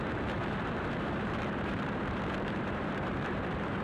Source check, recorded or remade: remade